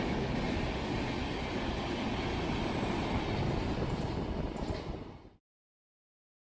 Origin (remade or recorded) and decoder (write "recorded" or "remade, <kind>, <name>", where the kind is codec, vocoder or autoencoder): recorded